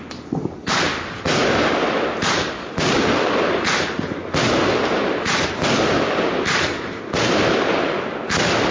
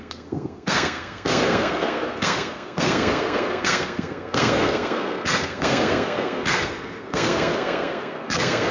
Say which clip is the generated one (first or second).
second